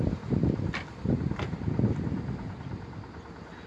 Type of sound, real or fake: real